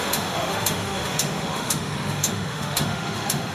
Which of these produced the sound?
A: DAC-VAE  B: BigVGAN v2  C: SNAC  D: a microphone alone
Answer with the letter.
A